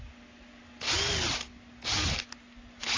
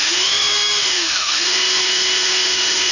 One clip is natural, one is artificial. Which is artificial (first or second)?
second